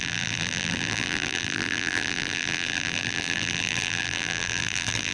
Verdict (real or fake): fake